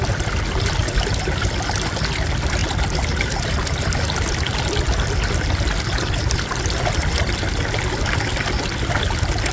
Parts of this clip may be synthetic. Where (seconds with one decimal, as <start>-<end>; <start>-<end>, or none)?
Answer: none